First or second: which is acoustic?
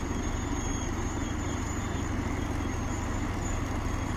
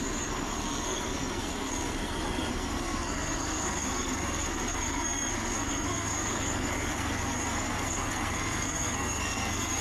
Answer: first